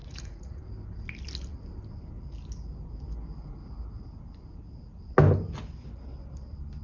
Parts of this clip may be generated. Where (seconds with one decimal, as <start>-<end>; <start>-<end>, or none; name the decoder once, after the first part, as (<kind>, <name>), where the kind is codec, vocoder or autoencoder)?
0.0-0.6 (vocoder, Vocos)